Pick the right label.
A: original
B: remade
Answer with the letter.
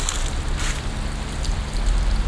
A